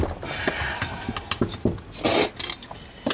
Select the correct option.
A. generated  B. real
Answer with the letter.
B